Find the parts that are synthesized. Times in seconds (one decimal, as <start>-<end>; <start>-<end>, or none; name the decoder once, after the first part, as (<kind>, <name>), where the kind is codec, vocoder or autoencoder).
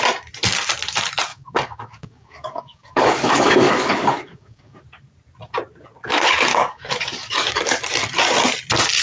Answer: 1.3-4.8 (codec, DAC); 6.5-7.8